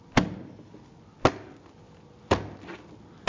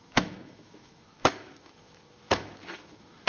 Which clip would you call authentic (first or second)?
first